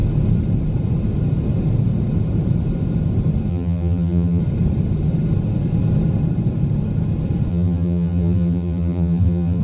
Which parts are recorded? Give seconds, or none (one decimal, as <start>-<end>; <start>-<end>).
0.0-3.5; 4.4-7.5